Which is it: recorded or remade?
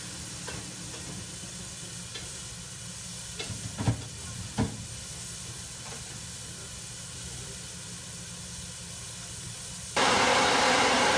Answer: recorded